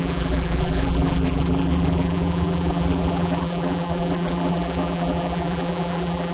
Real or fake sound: fake